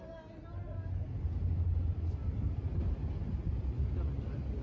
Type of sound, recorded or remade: recorded